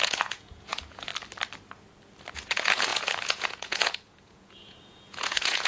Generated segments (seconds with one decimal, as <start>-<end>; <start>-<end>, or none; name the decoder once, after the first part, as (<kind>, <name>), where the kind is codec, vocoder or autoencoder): 0.0-1.1 (vocoder, Vocos); 2.3-5.7

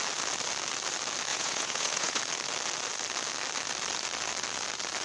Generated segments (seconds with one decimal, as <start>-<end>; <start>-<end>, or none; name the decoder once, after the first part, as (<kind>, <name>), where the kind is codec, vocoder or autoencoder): 1.3-2.2 (vocoder, Vocos)

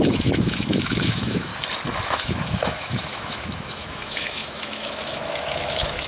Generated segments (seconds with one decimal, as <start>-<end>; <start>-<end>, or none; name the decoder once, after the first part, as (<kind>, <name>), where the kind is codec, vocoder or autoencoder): 0.0-1.5 (autoencoder, DAC-VAE); 2.0-6.1